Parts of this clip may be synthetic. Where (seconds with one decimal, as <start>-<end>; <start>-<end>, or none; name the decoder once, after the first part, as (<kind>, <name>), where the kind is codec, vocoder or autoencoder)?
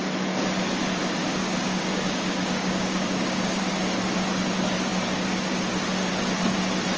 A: 1.2-3.6 (codec, DAC)